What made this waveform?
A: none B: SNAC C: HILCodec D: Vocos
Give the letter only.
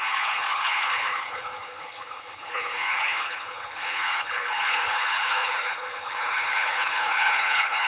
C